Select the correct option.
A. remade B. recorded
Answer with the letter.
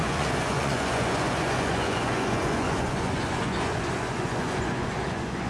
A